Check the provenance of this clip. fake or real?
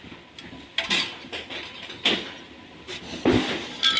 real